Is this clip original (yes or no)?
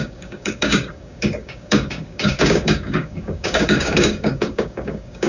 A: no